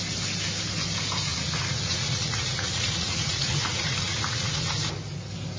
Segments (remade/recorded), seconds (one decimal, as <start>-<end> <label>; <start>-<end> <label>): 0.0-1.3 recorded; 1.3-4.7 remade; 4.7-5.6 recorded